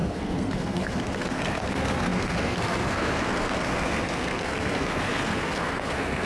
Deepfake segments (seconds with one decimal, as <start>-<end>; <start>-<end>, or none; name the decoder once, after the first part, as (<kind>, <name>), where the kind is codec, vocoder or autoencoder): 0.0-6.3 (codec, SNAC)